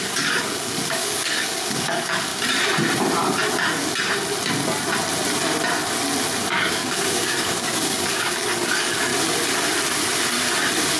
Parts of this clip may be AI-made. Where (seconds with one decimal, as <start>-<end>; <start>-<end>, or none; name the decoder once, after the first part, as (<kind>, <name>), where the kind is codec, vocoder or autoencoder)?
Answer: 0.0-2.3 (codec, DAC); 6.5-9.1